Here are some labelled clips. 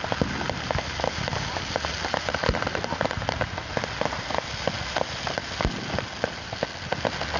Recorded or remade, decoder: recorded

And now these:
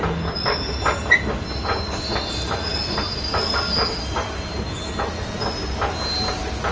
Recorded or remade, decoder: recorded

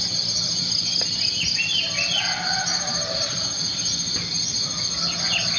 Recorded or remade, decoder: recorded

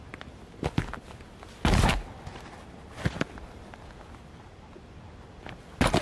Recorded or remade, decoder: recorded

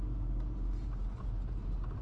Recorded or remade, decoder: recorded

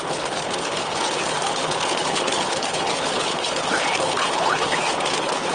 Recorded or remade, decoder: remade, codec, HILCodec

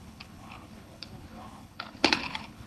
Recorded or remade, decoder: remade, codec, HILCodec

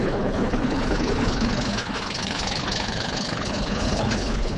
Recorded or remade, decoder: remade, codec, HILCodec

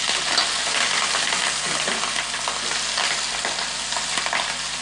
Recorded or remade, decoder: recorded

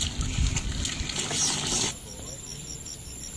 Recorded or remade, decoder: recorded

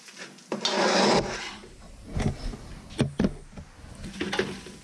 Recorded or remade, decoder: recorded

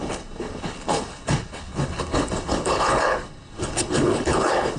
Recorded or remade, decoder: remade, codec, HILCodec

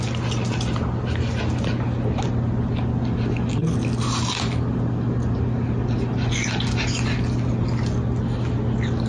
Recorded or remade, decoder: recorded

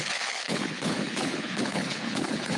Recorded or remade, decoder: remade, codec, HILCodec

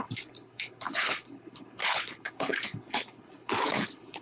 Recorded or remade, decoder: remade, codec, HILCodec